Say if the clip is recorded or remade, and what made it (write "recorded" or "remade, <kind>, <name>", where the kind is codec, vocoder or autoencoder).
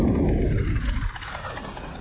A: recorded